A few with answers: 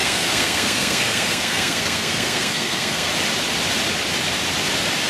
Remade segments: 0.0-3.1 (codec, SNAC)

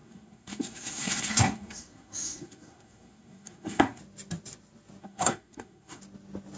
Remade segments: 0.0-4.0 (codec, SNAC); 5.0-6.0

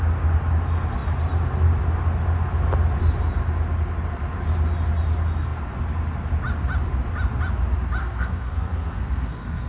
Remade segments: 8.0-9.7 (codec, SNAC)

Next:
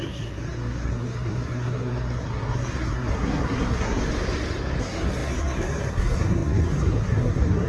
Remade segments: 0.0-4.0 (codec, SNAC); 4.8-7.7

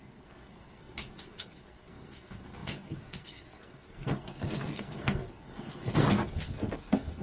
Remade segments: 0.0-7.2 (codec, SNAC)

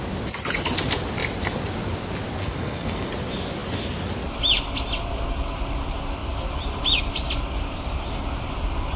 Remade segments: 2.4-3.1 (codec, SNAC)

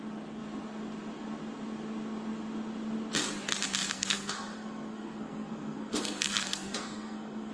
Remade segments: 3.9-7.5 (codec, SNAC)

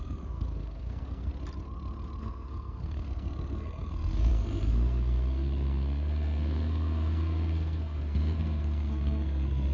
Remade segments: 0.0-1.3 (codec, SNAC); 2.2-9.7